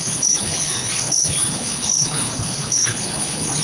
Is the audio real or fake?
fake